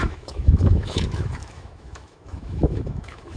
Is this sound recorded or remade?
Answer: remade